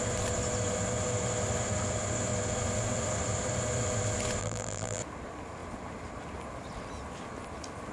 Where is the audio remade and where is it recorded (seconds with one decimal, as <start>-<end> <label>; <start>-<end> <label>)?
0.0-4.4 recorded; 4.4-5.0 remade; 5.0-7.9 recorded